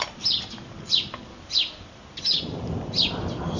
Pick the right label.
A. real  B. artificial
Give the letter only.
A